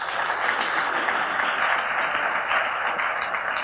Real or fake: real